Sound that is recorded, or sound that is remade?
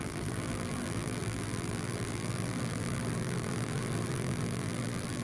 remade